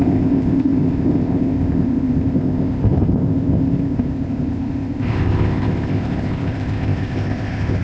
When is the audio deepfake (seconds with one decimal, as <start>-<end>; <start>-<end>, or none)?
0.0-7.8